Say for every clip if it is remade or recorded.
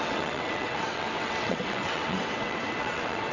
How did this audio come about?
remade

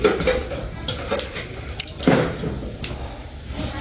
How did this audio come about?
recorded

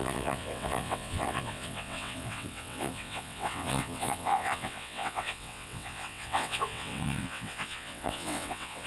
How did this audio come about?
remade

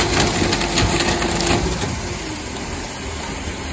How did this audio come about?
recorded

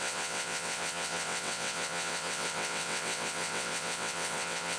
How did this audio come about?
remade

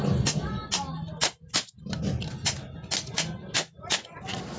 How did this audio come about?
recorded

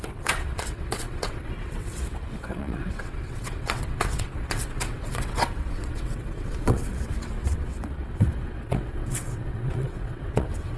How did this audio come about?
remade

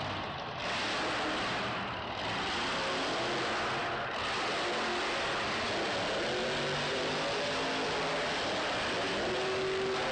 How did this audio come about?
recorded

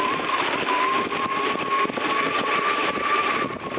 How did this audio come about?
recorded